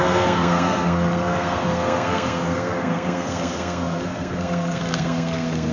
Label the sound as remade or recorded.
remade